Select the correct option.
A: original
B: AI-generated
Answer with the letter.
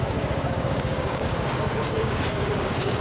B